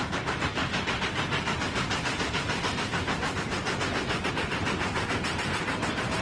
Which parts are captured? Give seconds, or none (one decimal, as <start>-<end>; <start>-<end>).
0.6-4.3